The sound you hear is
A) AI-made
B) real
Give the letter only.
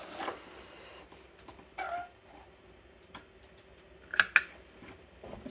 B